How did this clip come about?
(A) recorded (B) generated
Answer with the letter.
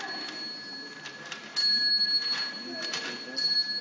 A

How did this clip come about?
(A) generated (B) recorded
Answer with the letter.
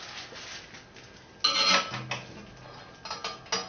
B